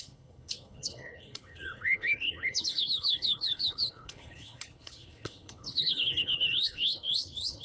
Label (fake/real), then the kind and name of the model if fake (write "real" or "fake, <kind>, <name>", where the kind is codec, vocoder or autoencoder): fake, codec, HILCodec